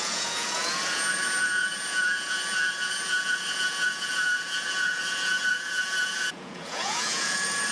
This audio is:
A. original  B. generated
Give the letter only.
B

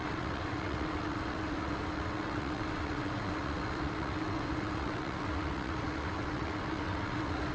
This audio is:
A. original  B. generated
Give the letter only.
B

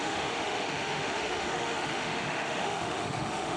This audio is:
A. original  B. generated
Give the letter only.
B